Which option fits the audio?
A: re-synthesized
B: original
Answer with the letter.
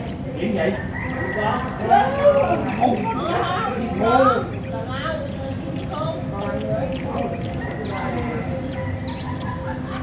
B